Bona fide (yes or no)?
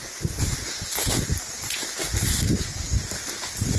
yes